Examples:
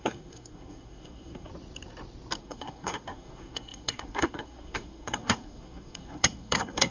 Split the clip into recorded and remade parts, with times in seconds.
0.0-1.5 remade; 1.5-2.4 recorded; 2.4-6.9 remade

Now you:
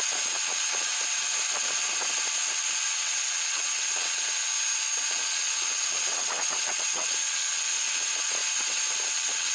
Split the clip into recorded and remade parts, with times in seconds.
0.0-0.9 remade; 0.9-2.9 recorded; 2.9-4.5 remade; 4.5-5.1 recorded; 5.1-8.4 remade; 8.4-9.0 recorded; 9.0-9.5 remade